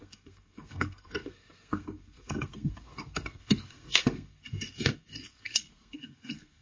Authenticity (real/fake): fake